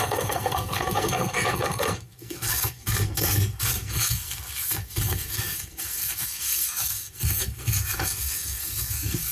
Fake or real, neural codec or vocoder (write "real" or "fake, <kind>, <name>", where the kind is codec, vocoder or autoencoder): fake, codec, SNAC